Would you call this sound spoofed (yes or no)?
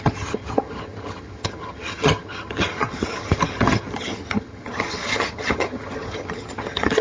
yes